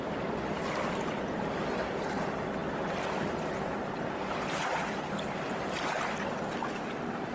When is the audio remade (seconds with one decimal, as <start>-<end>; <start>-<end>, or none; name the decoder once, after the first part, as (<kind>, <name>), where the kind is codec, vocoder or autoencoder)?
none